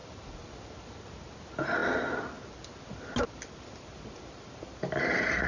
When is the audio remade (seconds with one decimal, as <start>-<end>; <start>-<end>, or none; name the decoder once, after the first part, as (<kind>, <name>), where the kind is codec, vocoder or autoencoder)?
none